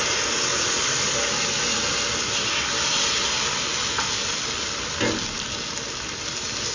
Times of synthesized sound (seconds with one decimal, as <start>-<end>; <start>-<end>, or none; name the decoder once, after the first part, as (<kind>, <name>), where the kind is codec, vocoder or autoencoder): none